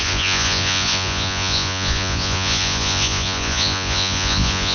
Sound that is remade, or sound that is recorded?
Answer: remade